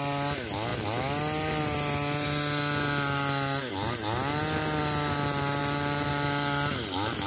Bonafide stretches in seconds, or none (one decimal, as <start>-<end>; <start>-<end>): 0.0-7.3